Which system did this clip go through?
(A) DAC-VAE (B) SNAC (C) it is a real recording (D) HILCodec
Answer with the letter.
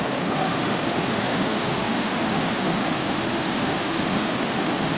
A